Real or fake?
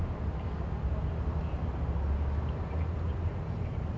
real